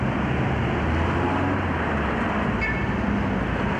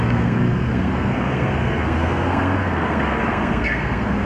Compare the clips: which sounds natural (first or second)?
first